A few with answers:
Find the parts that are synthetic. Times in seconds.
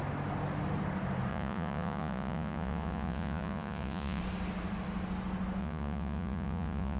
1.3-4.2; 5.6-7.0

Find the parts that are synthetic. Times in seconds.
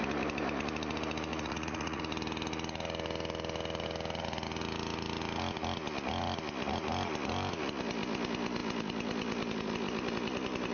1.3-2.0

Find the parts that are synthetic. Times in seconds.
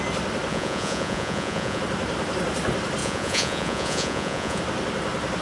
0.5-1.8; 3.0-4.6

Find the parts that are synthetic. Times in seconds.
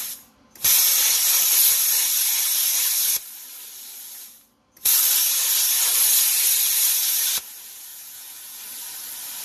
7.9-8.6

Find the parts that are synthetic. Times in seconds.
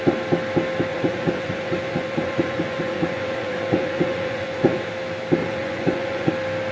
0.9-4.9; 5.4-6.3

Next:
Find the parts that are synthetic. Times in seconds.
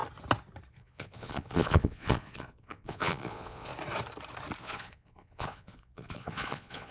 0.7-3.7; 4.6-6.9